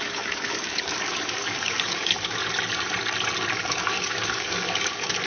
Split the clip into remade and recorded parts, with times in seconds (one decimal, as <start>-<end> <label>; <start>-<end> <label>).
0.0-2.4 remade; 2.4-3.5 recorded; 3.5-5.3 remade